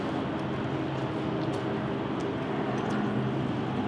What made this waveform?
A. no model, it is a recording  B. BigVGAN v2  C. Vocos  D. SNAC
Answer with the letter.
A